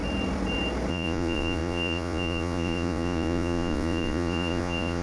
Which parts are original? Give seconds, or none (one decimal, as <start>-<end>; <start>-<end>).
0.0-0.9